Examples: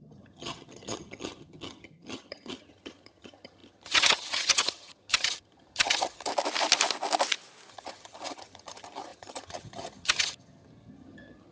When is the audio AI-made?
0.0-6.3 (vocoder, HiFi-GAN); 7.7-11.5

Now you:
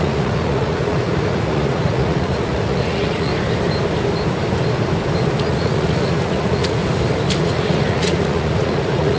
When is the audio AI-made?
0.0-3.3 (vocoder, Vocos); 5.4-6.8; 7.4-9.2

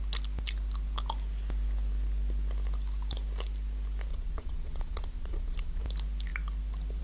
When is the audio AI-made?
4.1-5.8 (vocoder, Vocos)